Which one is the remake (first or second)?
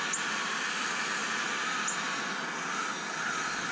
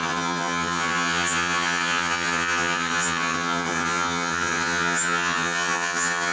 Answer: second